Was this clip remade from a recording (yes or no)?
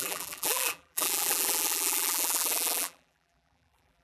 yes